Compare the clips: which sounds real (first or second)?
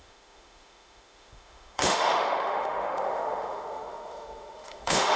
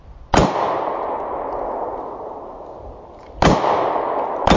second